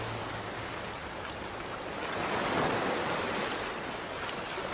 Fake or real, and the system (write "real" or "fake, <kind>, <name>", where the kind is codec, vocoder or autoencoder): real